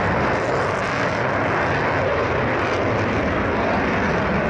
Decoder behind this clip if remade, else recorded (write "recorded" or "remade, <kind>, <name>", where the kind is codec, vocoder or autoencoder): recorded